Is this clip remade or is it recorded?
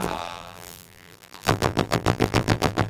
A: remade